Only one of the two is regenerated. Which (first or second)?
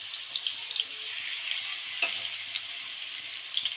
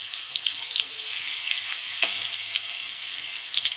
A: second